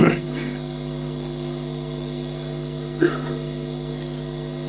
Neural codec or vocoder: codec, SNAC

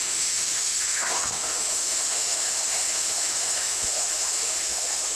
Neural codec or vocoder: autoencoder, DAC-VAE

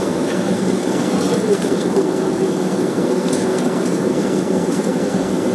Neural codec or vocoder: codec, SNAC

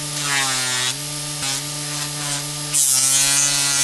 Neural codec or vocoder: none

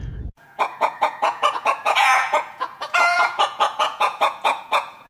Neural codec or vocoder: vocoder, Vocos